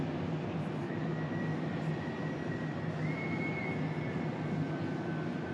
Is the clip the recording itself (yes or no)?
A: yes